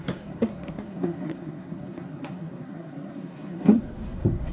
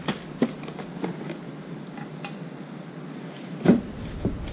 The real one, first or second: second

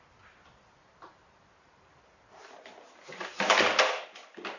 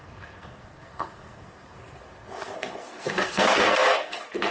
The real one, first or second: first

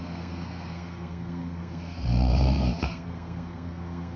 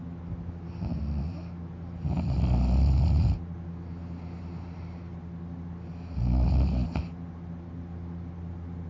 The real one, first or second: second